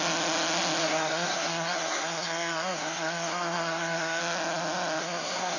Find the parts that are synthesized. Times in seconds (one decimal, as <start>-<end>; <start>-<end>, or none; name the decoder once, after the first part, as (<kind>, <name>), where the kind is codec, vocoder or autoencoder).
0.8-4.2 (codec, SNAC); 5.0-5.6